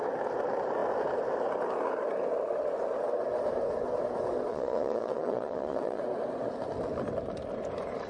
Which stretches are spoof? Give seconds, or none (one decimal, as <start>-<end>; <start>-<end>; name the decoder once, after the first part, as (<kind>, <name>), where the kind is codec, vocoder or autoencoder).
4.5-6.0 (vocoder, Vocos)